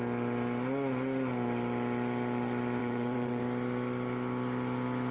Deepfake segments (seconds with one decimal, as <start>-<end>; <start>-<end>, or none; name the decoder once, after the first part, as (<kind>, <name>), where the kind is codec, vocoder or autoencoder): 2.8-3.4 (vocoder, WaveNeXt)